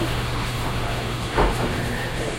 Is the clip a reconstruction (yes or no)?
yes